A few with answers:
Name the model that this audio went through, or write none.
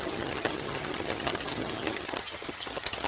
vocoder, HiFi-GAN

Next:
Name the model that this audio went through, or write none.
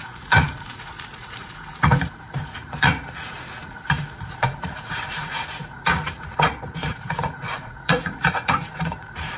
vocoder, Vocos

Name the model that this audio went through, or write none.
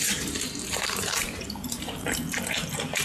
vocoder, BigVGAN v2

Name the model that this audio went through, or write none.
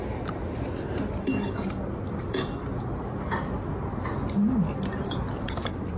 none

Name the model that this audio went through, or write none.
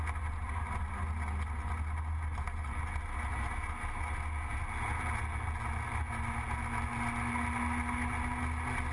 none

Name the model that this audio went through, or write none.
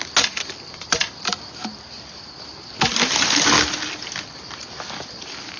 none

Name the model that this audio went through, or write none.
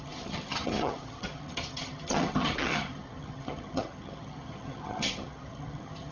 vocoder, HiFi-GAN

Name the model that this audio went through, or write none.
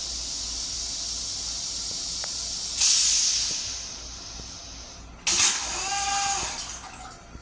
none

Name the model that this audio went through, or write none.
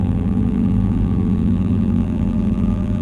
vocoder, BigVGAN v2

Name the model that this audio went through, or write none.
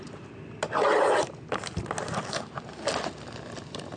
none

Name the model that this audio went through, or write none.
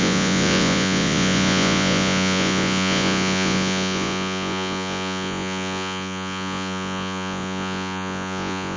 vocoder, Vocos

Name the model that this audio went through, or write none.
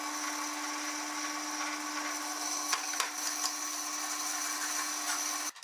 none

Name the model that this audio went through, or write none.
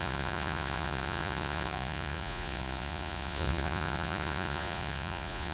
vocoder, Vocos